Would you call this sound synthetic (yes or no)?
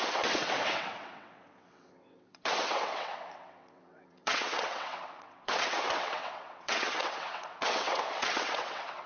yes